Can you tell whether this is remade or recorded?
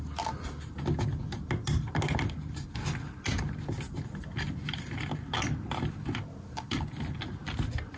recorded